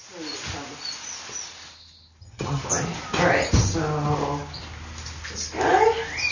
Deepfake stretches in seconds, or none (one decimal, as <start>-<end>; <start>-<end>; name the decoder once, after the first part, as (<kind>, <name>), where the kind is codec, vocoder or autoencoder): 2.2-2.6 (vocoder, HiFi-GAN)